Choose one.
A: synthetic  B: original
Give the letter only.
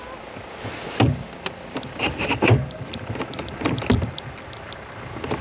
B